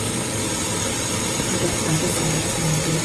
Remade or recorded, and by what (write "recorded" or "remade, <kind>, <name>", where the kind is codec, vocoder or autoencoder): recorded